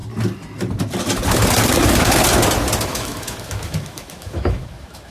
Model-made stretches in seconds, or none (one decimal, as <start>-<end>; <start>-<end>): 2.9-5.1